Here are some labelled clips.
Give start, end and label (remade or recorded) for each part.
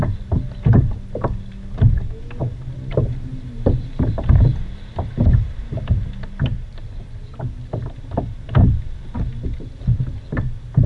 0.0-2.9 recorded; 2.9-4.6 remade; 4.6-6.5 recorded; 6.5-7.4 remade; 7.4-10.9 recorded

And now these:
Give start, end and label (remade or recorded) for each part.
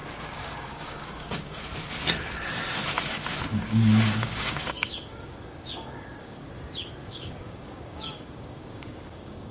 0.0-1.6 remade; 1.6-3.5 recorded; 3.5-6.5 remade; 6.5-7.0 recorded; 7.0-9.5 remade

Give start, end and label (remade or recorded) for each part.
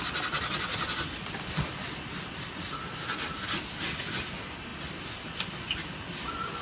0.0-6.6 recorded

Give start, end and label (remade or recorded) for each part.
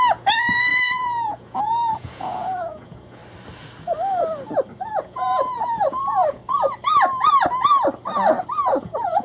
0.0-3.2 remade; 3.2-5.0 recorded; 5.0-6.4 remade; 6.4-8.7 recorded; 8.7-9.2 remade